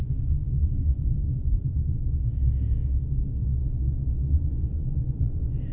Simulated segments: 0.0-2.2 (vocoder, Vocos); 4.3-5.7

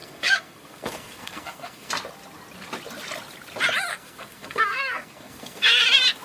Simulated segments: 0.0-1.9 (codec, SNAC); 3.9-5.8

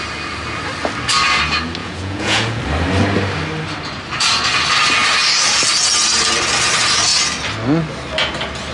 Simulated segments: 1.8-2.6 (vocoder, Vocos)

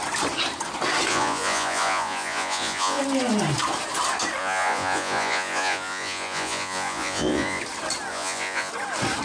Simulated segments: 1.1-3.0 (vocoder, Vocos); 4.4-7.6; 8.1-8.7

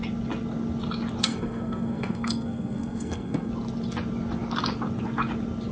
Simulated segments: 1.2-3.5 (codec, SNAC)

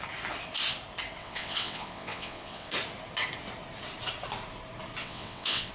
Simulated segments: 1.2-2.7 (vocoder, WaveNeXt); 5.0-5.7

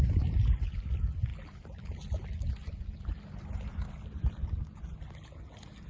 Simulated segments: 1.3-4.8 (vocoder, BigVGAN v2)

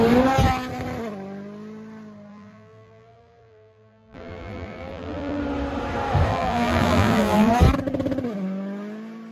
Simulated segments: 2.3-5.4 (vocoder, BigVGAN v2); 6.3-7.5